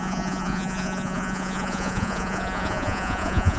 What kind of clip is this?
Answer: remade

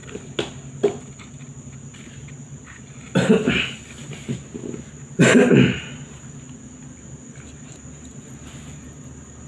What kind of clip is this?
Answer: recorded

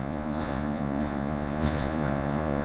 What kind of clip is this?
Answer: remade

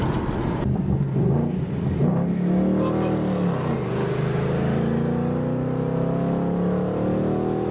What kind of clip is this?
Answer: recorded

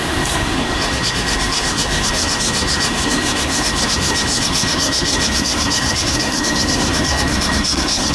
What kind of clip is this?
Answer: remade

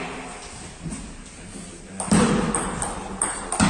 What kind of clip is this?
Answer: recorded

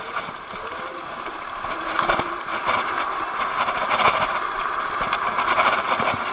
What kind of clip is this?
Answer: remade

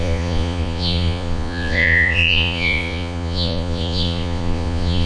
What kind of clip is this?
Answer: remade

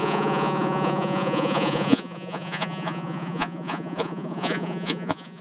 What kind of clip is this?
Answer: remade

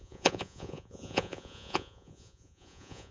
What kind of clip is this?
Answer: remade